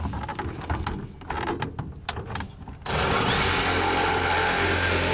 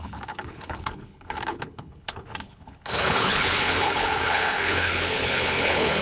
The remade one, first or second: second